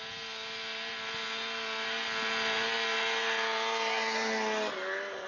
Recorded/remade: recorded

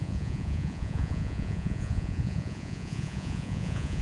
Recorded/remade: remade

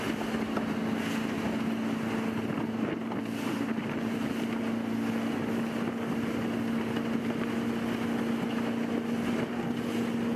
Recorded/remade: recorded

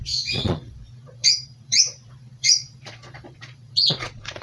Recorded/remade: remade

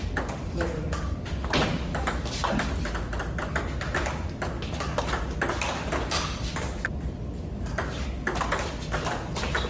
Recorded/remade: recorded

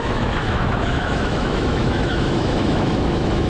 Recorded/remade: remade